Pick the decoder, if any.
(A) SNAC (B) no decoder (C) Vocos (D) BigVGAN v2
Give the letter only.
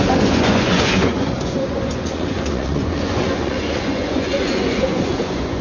C